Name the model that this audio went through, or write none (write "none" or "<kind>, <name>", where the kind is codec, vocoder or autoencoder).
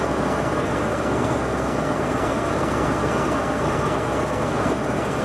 codec, SNAC